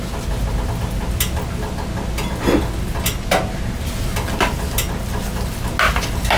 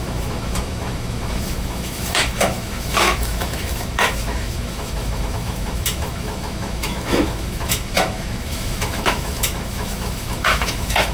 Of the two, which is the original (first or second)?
first